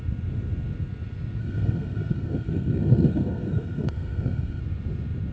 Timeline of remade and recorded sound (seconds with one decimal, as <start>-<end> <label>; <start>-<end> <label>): 0.0-1.4 recorded; 1.4-4.6 remade; 4.6-5.3 recorded

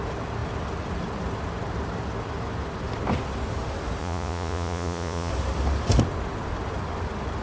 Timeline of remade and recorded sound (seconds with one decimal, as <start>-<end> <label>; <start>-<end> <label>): 0.0-4.0 recorded; 4.0-5.3 remade; 5.3-7.4 recorded

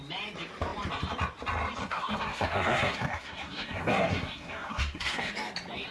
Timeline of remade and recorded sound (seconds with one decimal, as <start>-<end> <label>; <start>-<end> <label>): 0.0-1.8 recorded; 1.8-5.3 remade; 5.3-5.9 recorded